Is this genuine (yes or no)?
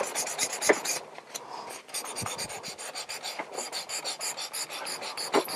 yes